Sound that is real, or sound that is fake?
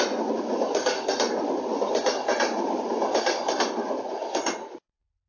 fake